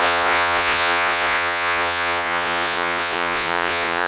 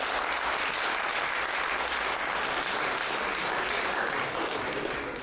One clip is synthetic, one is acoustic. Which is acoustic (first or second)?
second